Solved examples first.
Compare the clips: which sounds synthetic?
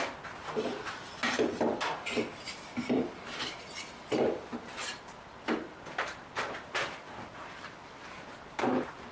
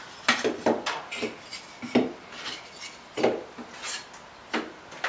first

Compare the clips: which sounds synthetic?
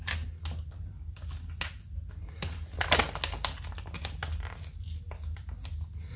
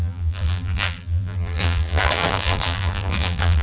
second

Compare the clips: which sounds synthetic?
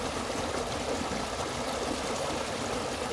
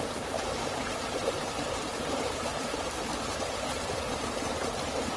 second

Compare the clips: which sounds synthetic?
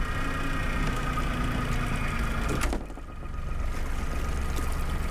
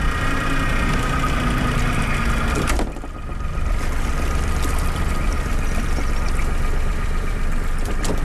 second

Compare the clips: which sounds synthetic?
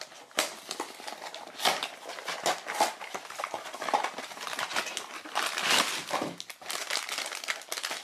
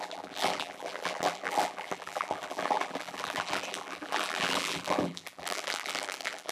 second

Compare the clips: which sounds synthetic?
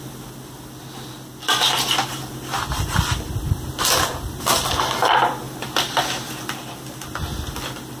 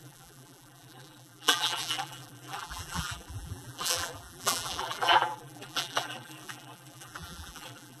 second